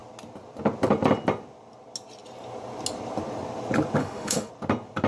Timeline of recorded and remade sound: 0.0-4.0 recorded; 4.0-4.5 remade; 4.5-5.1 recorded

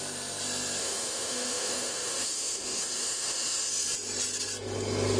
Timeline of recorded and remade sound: 0.0-0.8 recorded; 0.8-3.7 remade; 3.7-5.2 recorded

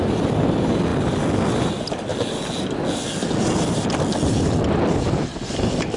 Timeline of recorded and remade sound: 0.0-6.0 recorded

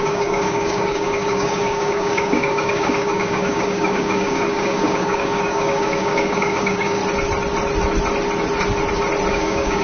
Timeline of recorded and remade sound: 0.0-7.0 remade; 7.0-9.3 recorded; 9.3-9.8 remade